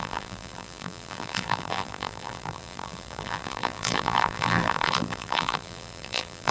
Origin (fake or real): fake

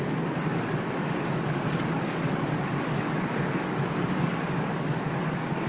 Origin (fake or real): fake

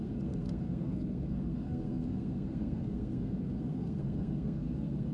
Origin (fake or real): fake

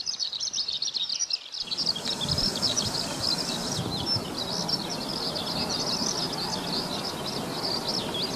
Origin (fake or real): real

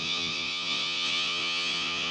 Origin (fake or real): fake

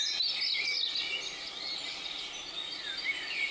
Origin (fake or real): real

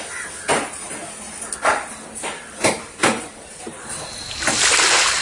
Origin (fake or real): real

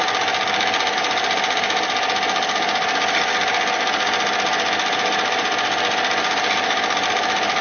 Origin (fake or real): real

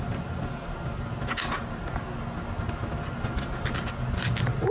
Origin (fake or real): real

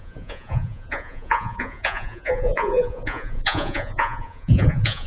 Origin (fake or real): fake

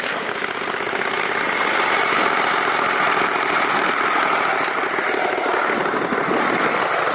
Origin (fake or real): real